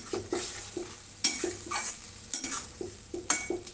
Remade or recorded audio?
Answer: recorded